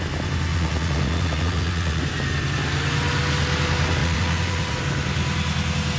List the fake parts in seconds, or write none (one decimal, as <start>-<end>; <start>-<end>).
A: 0.5-2.0; 4.0-4.8